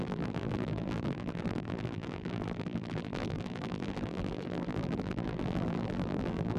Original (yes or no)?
no